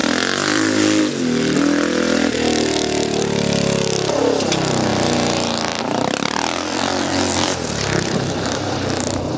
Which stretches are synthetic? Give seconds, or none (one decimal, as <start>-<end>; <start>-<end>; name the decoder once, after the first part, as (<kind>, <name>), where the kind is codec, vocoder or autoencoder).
0.0-1.0 (vocoder, BigVGAN v2)